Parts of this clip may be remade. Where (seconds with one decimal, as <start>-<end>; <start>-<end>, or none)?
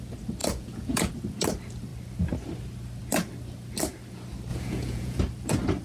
0.4-1.1; 4.5-5.2